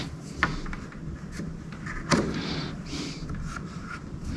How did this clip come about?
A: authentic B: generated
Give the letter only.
A